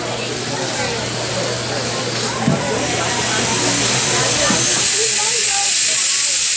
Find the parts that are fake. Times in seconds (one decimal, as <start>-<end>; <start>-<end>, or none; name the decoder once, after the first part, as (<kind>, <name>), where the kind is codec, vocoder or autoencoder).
none